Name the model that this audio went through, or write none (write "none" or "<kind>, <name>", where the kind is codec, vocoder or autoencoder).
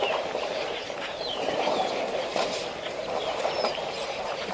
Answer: vocoder, BigVGAN v2